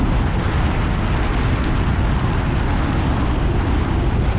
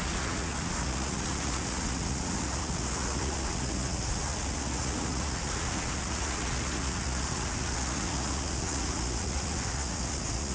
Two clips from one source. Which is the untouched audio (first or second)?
first